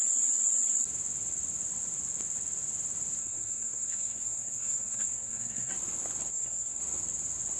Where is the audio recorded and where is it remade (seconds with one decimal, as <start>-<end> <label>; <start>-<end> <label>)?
0.0-3.2 recorded; 3.2-5.7 remade; 5.7-6.3 recorded; 6.3-6.8 remade; 6.8-7.6 recorded